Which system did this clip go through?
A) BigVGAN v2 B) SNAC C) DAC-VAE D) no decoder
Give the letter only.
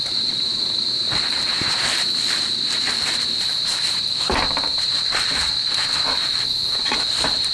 A